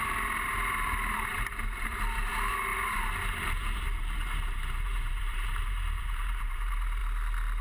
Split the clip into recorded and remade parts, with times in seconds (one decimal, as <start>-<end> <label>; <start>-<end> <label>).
0.0-7.0 remade; 7.0-7.6 recorded